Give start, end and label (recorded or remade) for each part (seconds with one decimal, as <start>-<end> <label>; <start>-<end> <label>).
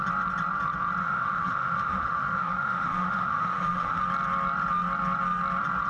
0.0-1.0 recorded; 1.0-4.0 remade; 4.0-5.9 recorded